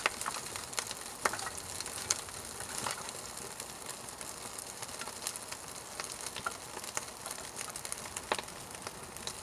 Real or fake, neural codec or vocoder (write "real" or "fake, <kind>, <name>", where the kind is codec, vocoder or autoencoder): real